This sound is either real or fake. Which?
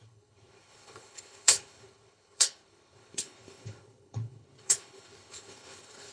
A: fake